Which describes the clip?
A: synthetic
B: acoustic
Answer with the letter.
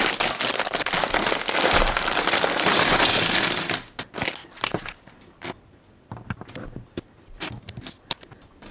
B